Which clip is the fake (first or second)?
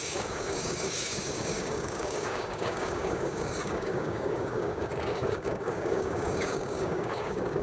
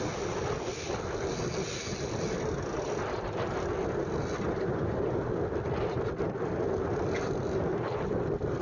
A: first